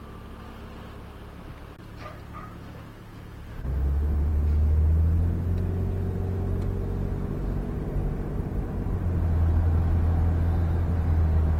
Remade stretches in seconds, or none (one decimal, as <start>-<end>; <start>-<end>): 3.5-4.3